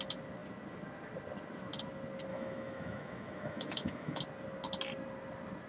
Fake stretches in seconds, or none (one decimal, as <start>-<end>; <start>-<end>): 2.3-4.2